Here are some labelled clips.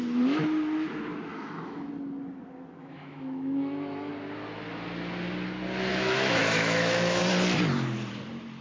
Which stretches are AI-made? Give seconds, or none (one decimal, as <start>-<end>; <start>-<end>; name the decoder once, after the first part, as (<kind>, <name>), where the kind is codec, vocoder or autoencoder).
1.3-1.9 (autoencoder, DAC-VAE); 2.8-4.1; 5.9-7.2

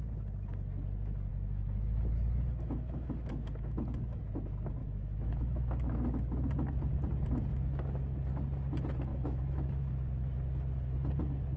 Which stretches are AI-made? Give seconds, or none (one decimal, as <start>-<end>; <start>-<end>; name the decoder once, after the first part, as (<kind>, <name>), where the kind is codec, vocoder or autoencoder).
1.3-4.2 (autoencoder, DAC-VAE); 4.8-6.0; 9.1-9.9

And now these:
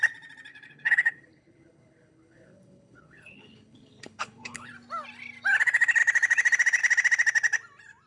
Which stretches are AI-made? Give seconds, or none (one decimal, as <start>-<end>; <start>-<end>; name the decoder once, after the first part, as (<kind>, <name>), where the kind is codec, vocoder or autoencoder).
0.5-4.7 (codec, HILCodec)

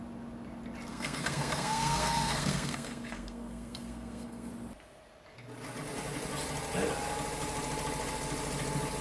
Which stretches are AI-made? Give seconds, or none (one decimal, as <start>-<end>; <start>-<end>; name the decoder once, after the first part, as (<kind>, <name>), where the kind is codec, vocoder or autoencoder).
0.9-4.5 (codec, SNAC)